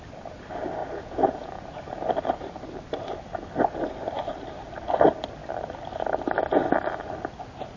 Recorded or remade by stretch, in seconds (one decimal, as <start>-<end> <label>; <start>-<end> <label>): 0.0-0.8 recorded; 0.8-1.6 remade; 1.6-7.8 recorded